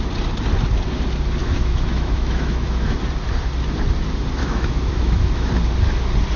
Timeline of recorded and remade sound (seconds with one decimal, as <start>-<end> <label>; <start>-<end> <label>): 0.0-1.4 recorded; 1.4-3.0 remade; 3.0-4.4 recorded; 4.4-5.5 remade; 5.5-6.4 recorded